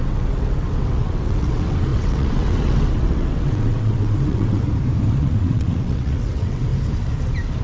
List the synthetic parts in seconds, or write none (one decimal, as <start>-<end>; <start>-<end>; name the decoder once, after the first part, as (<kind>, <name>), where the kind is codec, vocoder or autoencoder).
0.0-4.6 (vocoder, WaveNeXt); 5.1-6.7